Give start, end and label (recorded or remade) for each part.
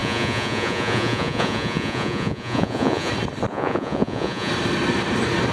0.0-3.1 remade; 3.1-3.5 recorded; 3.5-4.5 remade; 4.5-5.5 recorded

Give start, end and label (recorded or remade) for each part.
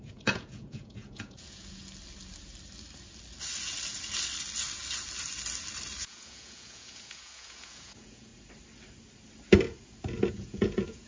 0.0-1.8 remade; 1.8-6.0 recorded; 6.0-8.3 remade; 8.3-10.3 recorded; 10.3-11.1 remade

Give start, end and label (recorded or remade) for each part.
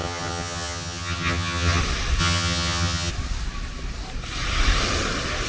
0.0-1.8 remade; 1.8-2.2 recorded; 2.2-3.1 remade; 3.1-5.5 recorded